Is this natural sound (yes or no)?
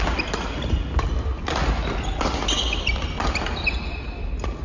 yes